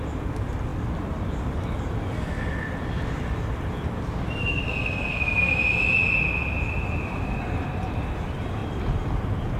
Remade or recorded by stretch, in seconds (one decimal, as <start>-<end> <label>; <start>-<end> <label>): 0.0-4.4 recorded; 4.4-5.5 remade; 5.5-9.6 recorded